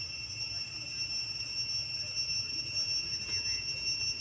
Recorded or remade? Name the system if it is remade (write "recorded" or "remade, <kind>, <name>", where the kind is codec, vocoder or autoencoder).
recorded